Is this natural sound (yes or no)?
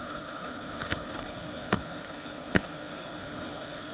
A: no